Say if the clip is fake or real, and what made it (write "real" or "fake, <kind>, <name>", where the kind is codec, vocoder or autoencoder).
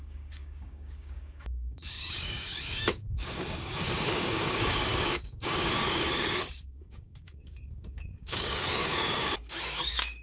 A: fake, codec, DAC